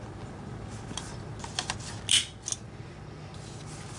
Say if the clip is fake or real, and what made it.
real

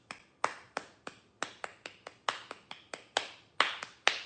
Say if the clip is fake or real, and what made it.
real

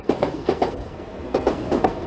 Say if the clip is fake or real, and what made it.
fake, codec, SNAC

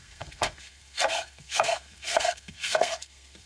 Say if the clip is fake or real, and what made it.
fake, codec, SNAC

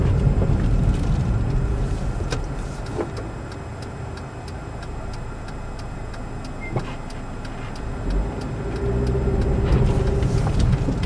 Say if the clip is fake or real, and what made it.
real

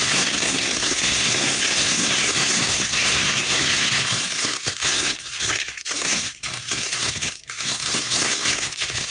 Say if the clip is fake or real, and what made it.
fake, codec, SNAC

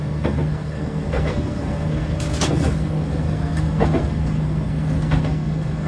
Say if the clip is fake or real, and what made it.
fake, codec, SNAC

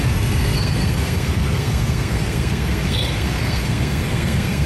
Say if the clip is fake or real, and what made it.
fake, codec, SNAC